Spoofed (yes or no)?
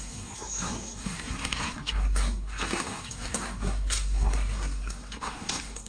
yes